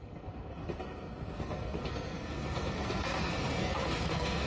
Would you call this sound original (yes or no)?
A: no